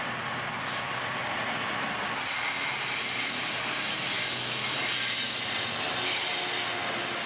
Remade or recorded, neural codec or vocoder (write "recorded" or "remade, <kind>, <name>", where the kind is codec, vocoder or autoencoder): recorded